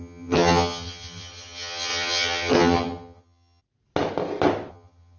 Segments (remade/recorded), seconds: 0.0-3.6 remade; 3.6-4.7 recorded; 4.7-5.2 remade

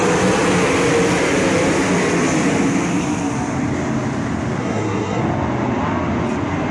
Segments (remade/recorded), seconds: 0.0-4.6 recorded; 4.6-5.2 remade; 5.2-6.7 recorded

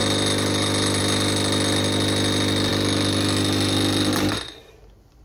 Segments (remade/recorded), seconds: 0.0-5.2 recorded

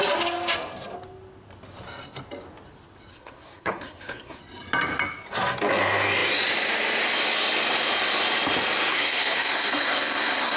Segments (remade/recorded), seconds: 0.0-3.1 recorded; 3.1-4.4 remade; 4.4-8.9 recorded; 8.9-10.6 remade

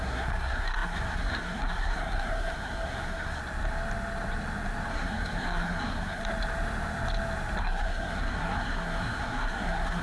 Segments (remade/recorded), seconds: 0.0-3.4 remade; 3.4-4.9 recorded; 4.9-6.2 remade; 6.2-7.6 recorded; 7.6-10.0 remade

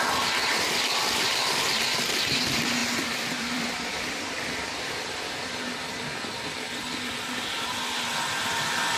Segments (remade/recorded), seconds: 0.0-0.4 recorded; 0.4-2.0 remade; 2.0-2.8 recorded; 2.8-7.1 remade; 7.1-9.0 recorded

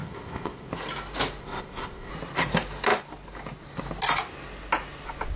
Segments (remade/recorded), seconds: 0.0-0.7 remade; 0.7-1.4 recorded; 1.4-2.1 remade; 2.1-5.4 recorded